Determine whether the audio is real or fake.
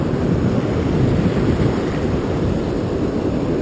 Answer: fake